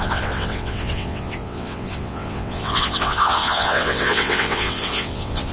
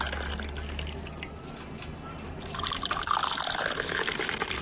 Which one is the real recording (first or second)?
second